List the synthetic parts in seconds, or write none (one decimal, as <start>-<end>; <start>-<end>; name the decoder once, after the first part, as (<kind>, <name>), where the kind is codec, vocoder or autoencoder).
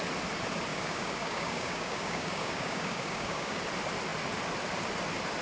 0.7-3.6 (codec, DAC)